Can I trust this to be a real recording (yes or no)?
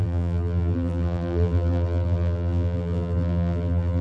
no